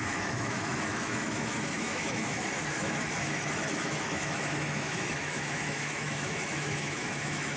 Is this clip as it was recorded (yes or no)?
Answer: no